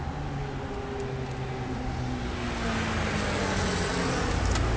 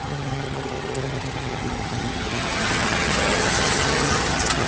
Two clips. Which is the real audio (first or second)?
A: first